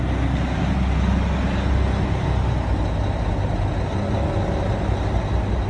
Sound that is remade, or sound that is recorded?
recorded